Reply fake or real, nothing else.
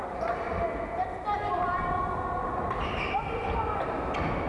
real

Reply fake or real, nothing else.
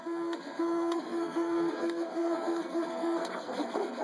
fake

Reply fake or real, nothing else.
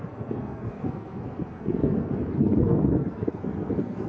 fake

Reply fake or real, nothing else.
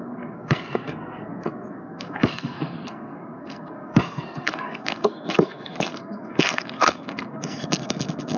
fake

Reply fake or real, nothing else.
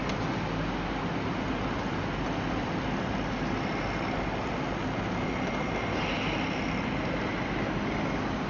real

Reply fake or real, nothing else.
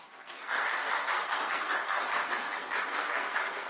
fake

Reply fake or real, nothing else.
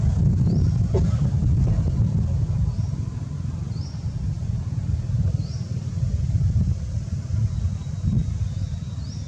real